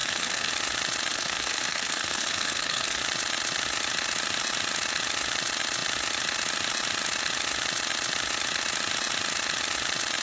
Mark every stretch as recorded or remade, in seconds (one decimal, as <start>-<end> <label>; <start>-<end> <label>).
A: 0.0-0.5 remade; 0.5-1.1 recorded; 1.1-3.0 remade; 3.0-10.2 recorded